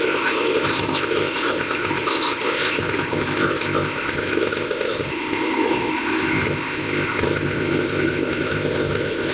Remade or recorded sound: remade